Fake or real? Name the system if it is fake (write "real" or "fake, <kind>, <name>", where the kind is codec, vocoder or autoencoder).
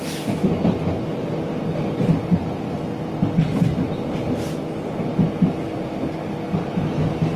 real